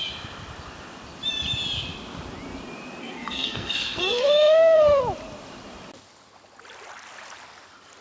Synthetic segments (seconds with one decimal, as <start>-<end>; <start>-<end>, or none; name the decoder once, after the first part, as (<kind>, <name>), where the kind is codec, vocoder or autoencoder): 3.0-5.0 (codec, SNAC)